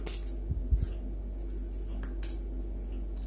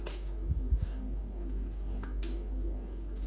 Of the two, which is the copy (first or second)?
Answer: second